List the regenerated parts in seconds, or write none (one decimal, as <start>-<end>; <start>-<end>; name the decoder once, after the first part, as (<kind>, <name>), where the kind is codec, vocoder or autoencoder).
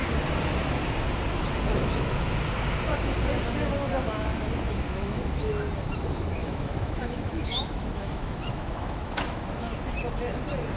1.7-2.3 (autoencoder, DAC-VAE); 4.7-5.5; 6.4-9.8